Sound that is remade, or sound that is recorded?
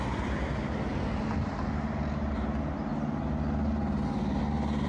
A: recorded